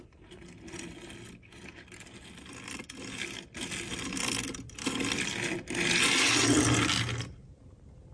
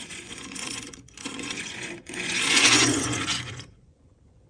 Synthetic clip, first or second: second